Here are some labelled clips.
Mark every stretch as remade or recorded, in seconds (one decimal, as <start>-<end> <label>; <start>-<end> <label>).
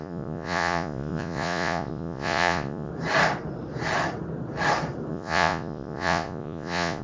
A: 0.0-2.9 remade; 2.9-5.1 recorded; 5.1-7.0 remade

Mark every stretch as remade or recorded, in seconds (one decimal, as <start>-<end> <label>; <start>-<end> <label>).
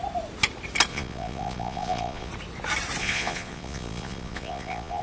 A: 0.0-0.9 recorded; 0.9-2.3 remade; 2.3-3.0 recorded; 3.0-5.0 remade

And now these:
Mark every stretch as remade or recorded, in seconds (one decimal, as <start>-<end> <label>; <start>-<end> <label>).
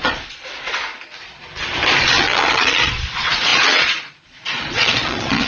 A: 0.0-0.8 remade; 0.8-2.0 recorded; 2.0-5.5 remade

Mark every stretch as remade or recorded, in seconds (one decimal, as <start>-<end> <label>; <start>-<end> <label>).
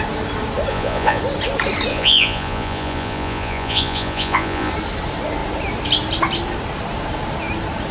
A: 0.0-0.7 recorded; 0.7-1.2 remade; 1.2-1.9 recorded; 1.9-4.7 remade; 4.7-7.9 recorded